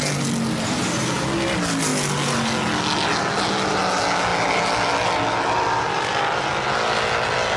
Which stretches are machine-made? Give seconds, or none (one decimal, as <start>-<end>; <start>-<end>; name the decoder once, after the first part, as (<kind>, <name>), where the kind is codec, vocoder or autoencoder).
none